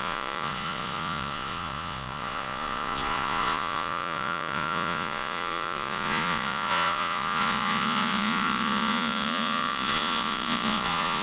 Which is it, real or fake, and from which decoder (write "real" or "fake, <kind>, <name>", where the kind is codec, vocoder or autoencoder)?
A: fake, vocoder, Vocos